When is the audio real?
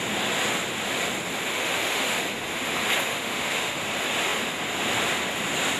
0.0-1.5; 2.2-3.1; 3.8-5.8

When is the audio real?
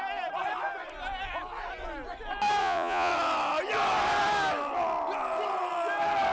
0.0-2.6; 3.1-6.3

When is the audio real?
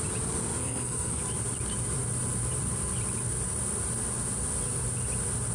0.0-0.6; 1.2-5.5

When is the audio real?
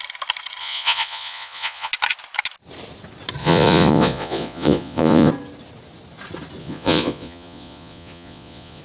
0.0-0.6; 1.9-3.4; 5.3-6.6